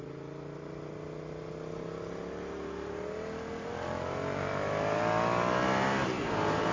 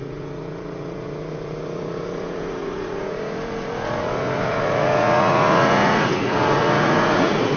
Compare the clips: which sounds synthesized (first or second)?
second